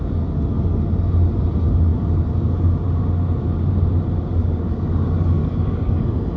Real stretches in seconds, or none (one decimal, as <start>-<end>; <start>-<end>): 0.0-4.4; 4.9-5.4; 5.9-6.4